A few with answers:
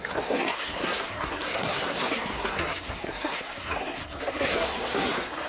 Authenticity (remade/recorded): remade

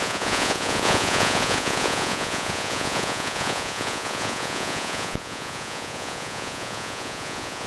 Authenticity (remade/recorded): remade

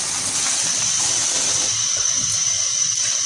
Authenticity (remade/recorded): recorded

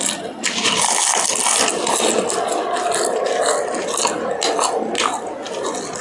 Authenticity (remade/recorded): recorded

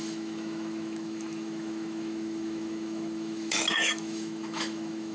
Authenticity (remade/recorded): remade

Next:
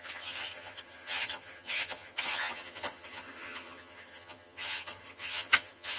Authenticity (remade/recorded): remade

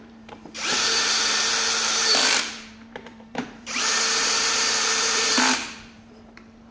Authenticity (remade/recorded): remade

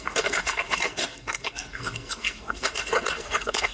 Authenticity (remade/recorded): remade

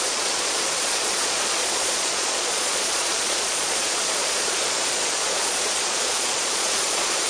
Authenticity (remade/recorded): remade